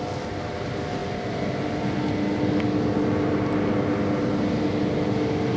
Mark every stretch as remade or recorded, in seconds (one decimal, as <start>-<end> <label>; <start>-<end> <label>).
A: 0.0-5.6 recorded